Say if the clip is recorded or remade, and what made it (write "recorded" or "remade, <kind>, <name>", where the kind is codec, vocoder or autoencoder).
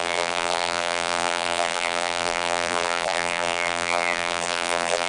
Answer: remade, vocoder, BigVGAN v2